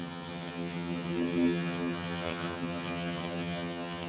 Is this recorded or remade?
remade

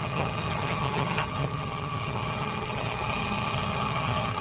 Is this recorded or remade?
remade